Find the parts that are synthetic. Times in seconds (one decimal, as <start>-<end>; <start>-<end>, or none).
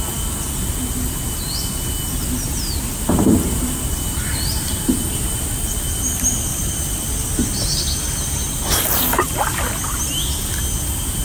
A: 2.2-5.7; 6.5-7.1